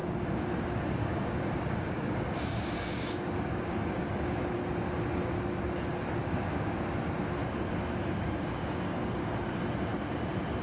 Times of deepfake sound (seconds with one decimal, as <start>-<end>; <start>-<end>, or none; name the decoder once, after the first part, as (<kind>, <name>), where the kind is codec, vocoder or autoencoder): 0.0-4.4 (codec, DAC); 6.2-6.7; 8.0-9.5